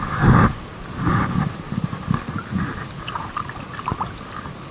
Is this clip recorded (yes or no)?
yes